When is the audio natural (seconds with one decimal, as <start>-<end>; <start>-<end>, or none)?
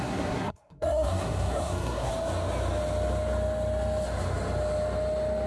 2.1-5.5